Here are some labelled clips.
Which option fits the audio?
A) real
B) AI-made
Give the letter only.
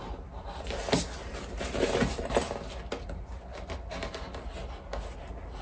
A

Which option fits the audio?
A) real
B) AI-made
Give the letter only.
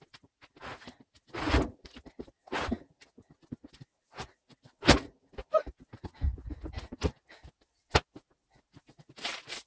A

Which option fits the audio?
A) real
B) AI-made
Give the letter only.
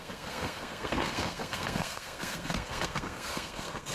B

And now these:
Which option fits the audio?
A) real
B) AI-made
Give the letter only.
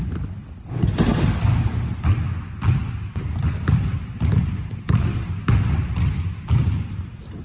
A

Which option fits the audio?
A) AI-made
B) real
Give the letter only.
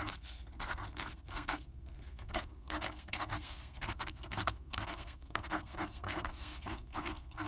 A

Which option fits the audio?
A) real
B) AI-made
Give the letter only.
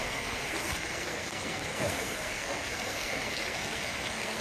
B